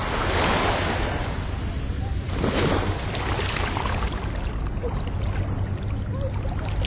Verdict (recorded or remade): recorded